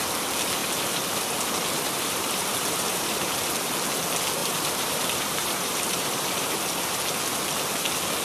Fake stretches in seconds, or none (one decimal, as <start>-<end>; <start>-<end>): 0.6-3.5; 4.4-6.5